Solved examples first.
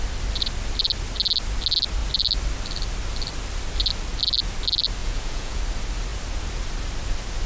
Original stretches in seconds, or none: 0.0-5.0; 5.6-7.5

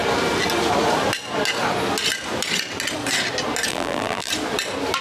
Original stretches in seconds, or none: 0.0-3.7; 4.3-5.0